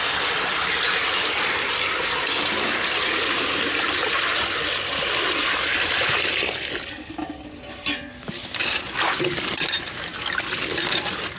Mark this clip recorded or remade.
recorded